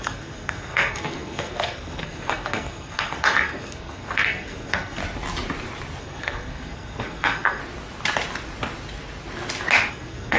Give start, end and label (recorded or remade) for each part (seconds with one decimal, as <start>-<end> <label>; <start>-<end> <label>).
0.0-5.0 remade; 5.0-6.0 recorded; 6.0-7.6 remade; 7.6-9.9 recorded; 9.9-10.4 remade